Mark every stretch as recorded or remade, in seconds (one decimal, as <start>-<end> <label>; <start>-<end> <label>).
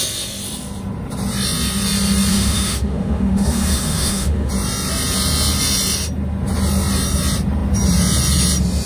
0.0-2.3 recorded; 2.3-4.5 remade; 4.5-8.9 recorded